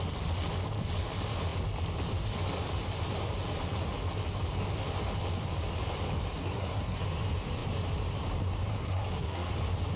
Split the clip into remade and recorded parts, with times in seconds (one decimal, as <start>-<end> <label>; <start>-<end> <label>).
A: 0.0-6.4 recorded; 6.4-7.0 remade; 7.0-8.7 recorded; 8.7-9.5 remade; 9.5-10.0 recorded